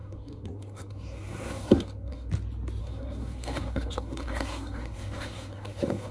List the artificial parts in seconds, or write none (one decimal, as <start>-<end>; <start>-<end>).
0.0-2.3; 2.8-6.1